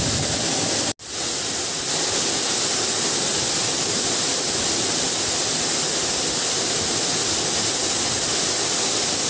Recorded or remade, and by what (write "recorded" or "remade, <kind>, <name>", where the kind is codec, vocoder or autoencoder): recorded